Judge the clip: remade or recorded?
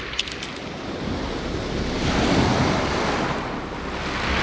recorded